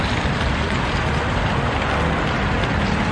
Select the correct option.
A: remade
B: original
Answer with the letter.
B